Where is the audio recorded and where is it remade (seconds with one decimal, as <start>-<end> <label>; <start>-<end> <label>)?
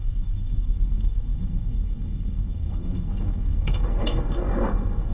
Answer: 0.0-5.1 remade